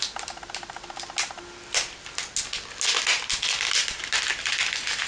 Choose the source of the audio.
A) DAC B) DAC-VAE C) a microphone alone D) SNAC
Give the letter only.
C